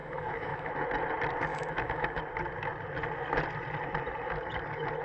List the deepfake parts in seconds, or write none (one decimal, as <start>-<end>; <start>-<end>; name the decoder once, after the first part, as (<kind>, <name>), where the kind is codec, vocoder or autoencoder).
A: 0.0-0.7 (autoencoder, DAC-VAE); 1.5-2.2